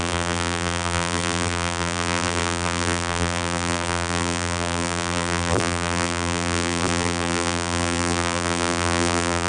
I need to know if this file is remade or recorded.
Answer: remade